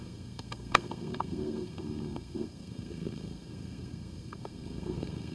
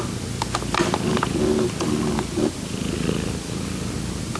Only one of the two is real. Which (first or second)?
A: second